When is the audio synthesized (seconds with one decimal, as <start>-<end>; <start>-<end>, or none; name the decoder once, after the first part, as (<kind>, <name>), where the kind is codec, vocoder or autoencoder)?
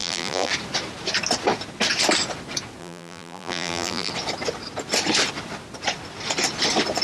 0.0-0.5 (vocoder, BigVGAN v2); 2.8-4.1